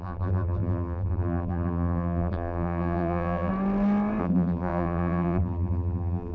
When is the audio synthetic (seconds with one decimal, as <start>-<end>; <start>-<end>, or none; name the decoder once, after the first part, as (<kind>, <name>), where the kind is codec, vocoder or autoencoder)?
0.0-3.5 (vocoder, BigVGAN v2); 4.2-6.3